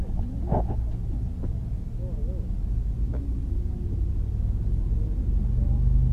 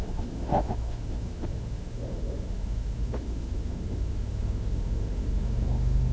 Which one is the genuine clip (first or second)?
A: first